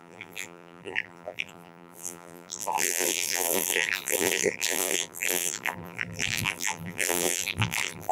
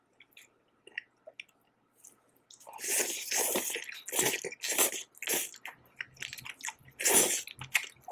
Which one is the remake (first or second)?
first